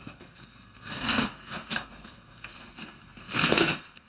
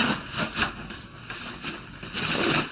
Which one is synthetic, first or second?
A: first